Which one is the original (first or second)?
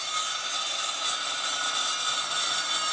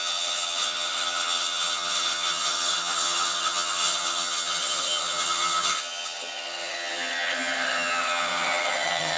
first